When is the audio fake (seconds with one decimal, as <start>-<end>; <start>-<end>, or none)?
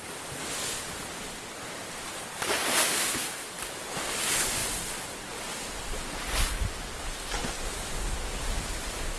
none